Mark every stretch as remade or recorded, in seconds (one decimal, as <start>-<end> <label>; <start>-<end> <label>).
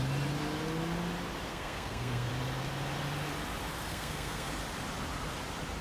0.0-1.5 recorded; 1.5-2.3 remade; 2.3-3.9 recorded; 3.9-4.5 remade; 4.5-5.8 recorded